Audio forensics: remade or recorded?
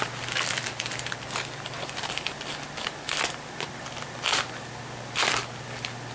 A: recorded